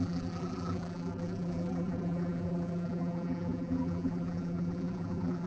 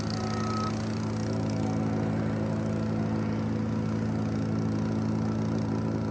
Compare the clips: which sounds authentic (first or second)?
second